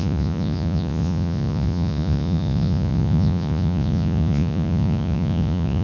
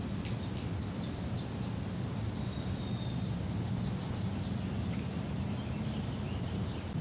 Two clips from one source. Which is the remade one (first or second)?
first